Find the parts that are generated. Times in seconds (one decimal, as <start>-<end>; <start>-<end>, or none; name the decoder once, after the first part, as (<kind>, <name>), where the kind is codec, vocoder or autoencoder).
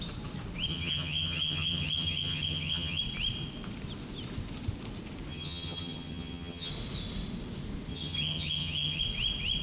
0.7-3.0 (vocoder, HiFi-GAN); 5.3-6.7; 7.9-9.0